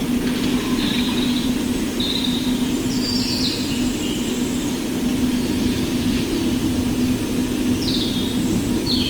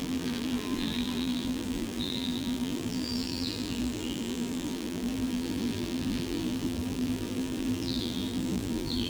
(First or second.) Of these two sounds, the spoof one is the second